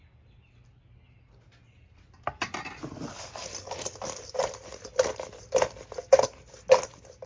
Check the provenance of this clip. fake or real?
real